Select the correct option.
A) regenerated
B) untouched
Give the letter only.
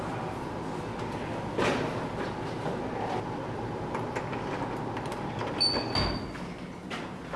B